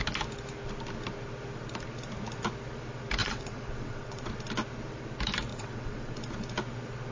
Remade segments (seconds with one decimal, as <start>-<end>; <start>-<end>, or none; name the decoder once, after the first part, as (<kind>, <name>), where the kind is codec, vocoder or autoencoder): 3.2-4.2 (vocoder, WaveNeXt); 5.5-6.1